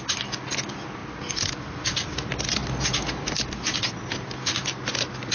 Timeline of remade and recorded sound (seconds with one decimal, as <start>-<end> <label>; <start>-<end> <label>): 0.0-5.3 recorded